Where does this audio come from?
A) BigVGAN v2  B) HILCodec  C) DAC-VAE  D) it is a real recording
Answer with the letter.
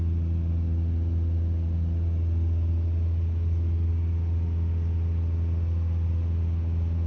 D